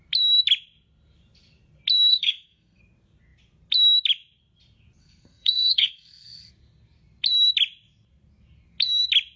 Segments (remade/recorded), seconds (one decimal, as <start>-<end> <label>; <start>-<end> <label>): 0.0-2.1 recorded; 2.1-2.8 remade; 2.8-5.0 recorded; 5.0-6.5 remade; 6.5-9.4 recorded